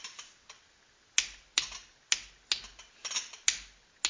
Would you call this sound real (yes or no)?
yes